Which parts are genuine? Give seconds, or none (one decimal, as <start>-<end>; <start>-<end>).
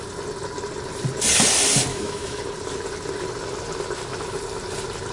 0.0-1.9; 2.4-5.1